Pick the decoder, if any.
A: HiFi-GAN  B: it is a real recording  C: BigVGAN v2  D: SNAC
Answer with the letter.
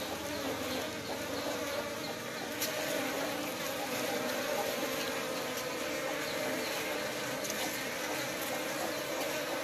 B